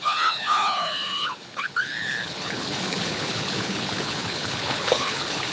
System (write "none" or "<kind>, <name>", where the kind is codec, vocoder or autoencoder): codec, HILCodec